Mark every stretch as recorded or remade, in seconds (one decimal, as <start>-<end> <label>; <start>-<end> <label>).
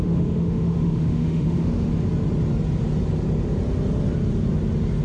0.0-1.9 remade; 1.9-5.0 recorded